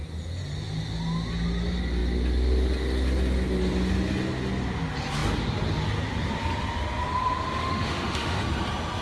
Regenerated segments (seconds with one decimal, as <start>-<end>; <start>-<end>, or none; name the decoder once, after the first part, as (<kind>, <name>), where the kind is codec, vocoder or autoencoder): 7.6-8.4 (autoencoder, DAC-VAE)